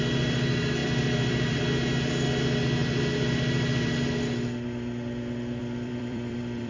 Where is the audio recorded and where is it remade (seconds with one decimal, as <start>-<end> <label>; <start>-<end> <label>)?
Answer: 0.0-0.8 recorded; 0.8-1.6 remade; 1.6-5.6 recorded; 5.6-6.7 remade